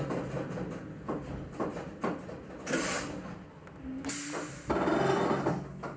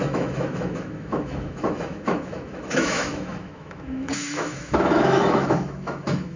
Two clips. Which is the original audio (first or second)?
first